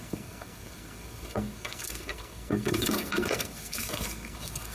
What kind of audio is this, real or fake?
fake